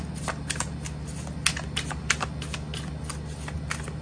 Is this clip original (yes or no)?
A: yes